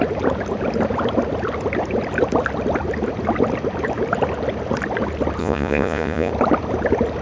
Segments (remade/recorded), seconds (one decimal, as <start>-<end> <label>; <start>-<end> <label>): 0.0-5.4 recorded; 5.4-6.3 remade; 6.3-7.2 recorded